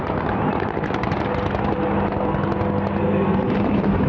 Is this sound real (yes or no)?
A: yes